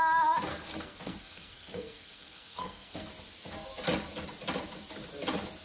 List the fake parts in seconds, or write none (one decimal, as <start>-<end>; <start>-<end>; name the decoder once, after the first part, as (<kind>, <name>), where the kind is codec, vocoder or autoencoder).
0.5-3.1 (codec, SNAC)